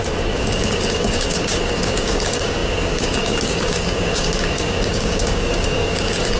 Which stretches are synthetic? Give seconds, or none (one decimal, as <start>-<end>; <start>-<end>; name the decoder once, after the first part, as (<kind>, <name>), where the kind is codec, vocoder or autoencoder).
0.0-6.4 (codec, DAC)